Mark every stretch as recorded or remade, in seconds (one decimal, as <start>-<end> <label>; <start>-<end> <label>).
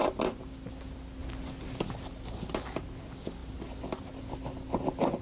0.0-5.2 recorded